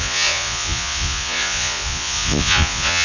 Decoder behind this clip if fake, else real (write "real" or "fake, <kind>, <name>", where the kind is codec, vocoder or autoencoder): fake, vocoder, Vocos